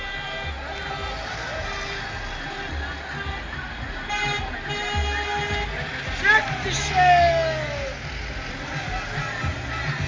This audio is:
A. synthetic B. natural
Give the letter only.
B